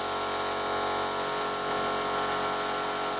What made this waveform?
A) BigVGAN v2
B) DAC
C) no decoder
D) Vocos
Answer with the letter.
C